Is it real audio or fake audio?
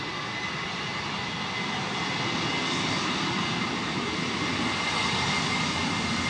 real